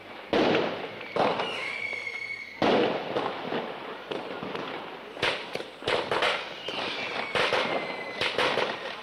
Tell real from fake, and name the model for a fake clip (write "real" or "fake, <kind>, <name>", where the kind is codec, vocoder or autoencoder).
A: real